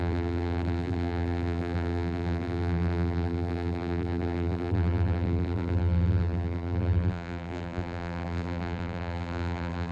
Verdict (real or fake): fake